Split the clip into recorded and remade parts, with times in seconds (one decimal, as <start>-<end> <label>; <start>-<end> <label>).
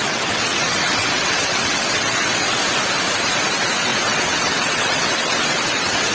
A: 0.0-2.6 remade; 2.6-3.5 recorded; 3.5-6.1 remade